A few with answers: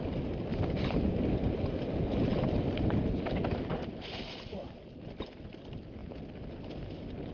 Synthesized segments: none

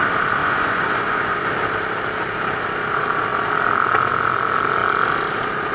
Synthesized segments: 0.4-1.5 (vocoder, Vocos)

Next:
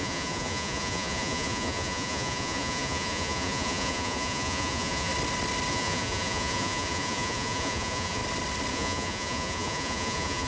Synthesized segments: 0.0-5.1 (vocoder, Vocos); 5.7-8.2; 8.7-10.5

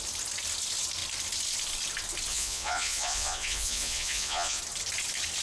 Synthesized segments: 2.3-4.6 (vocoder, Vocos)

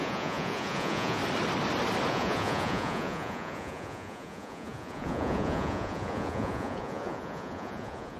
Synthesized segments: 0.0-1.2 (vocoder, Vocos); 2.1-8.2

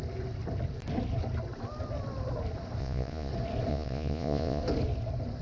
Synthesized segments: 2.8-3.3 (vocoder, Vocos); 3.7-4.6

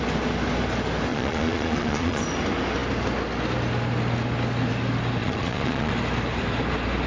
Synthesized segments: 1.1-2.2 (vocoder, Vocos); 5.2-5.9